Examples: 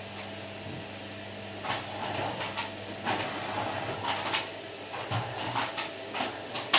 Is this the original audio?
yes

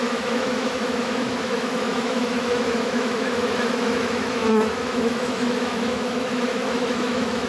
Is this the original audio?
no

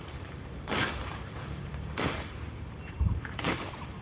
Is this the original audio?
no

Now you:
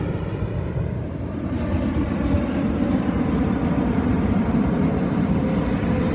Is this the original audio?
no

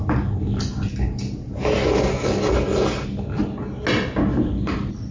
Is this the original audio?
yes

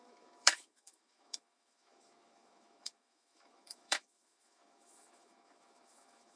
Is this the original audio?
no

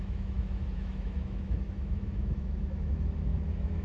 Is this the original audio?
no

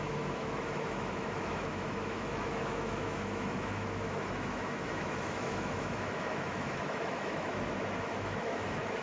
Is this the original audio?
no